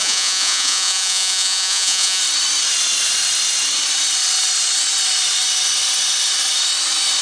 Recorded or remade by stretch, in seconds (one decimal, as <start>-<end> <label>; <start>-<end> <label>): 0.0-2.2 remade; 2.2-7.2 recorded